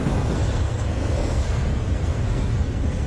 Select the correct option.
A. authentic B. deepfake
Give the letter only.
B